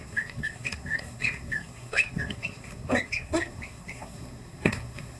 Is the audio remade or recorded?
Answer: remade